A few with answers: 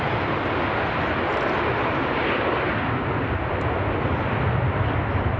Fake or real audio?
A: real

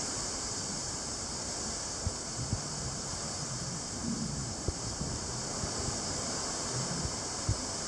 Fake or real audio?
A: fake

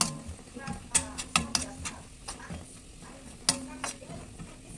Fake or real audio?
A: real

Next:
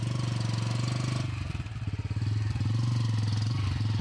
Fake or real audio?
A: real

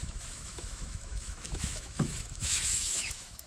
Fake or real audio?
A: fake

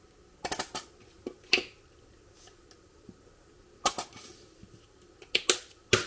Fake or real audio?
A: real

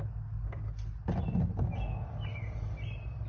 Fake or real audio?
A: real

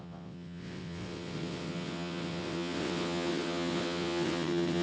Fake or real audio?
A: fake